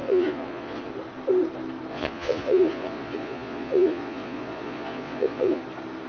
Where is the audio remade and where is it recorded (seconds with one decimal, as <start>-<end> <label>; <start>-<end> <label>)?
0.0-0.9 remade; 0.9-1.9 recorded; 1.9-5.6 remade; 5.6-6.1 recorded